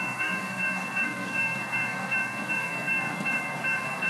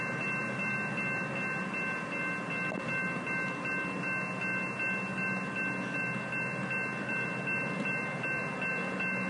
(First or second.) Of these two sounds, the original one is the second